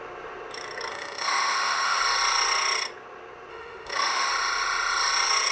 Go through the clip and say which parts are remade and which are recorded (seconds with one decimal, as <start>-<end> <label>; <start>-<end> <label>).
0.0-0.9 recorded; 0.9-2.0 remade; 2.0-3.5 recorded; 3.5-4.3 remade; 4.3-5.5 recorded